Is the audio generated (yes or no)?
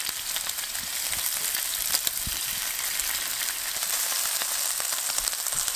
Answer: no